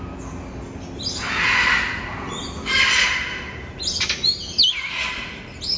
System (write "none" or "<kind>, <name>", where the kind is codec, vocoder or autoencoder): none